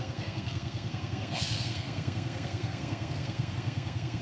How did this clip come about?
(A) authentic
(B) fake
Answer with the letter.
B